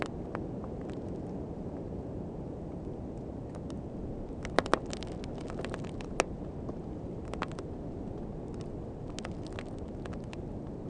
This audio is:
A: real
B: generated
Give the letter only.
A